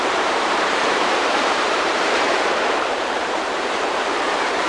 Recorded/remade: remade